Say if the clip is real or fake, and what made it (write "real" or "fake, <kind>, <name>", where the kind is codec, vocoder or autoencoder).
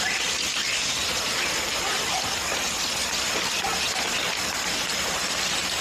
real